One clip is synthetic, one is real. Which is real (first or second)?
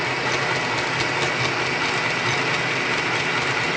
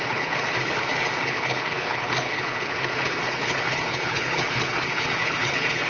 first